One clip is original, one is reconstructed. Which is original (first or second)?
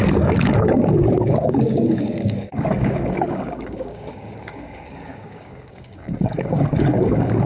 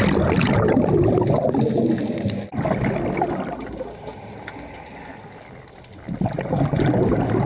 second